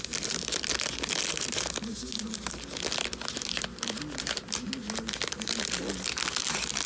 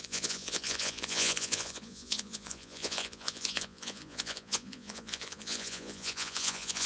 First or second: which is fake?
second